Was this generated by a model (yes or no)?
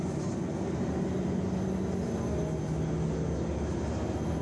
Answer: no